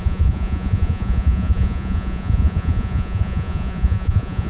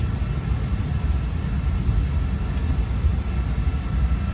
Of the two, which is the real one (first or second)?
second